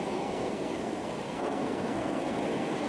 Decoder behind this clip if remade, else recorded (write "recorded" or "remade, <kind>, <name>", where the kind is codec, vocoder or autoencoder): remade, codec, SNAC